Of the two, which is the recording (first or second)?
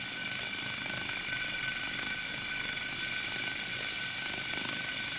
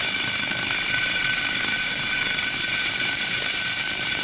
first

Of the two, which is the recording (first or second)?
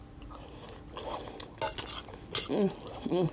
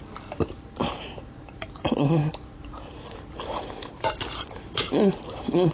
first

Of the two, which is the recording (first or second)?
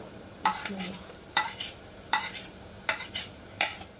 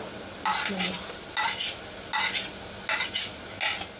second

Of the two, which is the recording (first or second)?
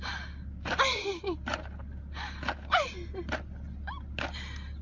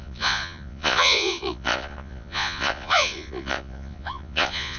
first